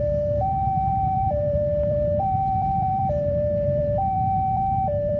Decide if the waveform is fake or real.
fake